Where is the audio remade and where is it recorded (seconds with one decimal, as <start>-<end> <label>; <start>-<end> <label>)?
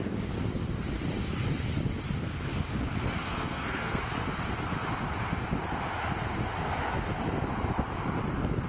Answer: 0.0-3.2 recorded; 3.2-4.0 remade; 4.0-8.7 recorded